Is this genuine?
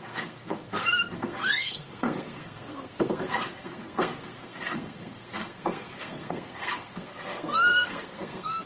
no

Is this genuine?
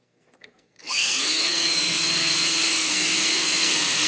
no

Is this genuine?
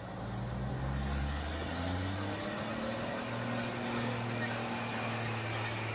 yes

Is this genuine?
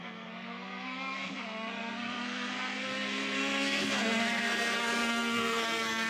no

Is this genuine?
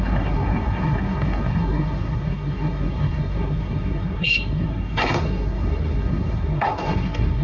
no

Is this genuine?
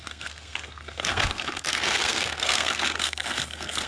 no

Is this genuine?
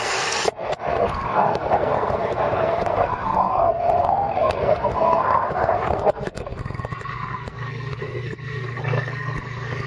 no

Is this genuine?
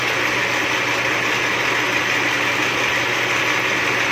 yes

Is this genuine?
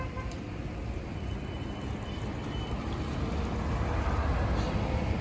yes